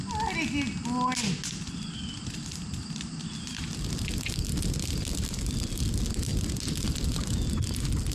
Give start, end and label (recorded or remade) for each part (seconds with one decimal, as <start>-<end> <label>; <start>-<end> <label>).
0.0-8.1 recorded